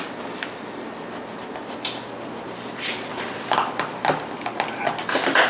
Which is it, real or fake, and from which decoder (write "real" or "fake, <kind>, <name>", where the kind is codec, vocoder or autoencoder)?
real